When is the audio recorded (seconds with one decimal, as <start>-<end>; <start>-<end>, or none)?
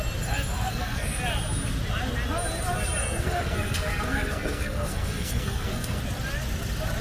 0.0-0.6; 1.2-3.0; 6.0-7.0